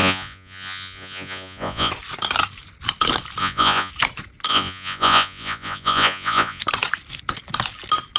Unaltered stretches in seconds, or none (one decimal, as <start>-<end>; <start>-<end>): 1.9-3.4; 3.9-4.5; 6.6-8.2